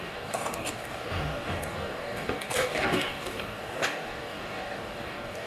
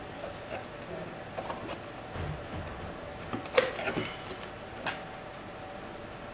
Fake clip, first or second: first